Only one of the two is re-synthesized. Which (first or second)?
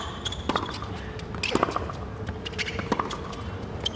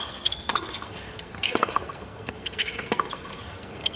second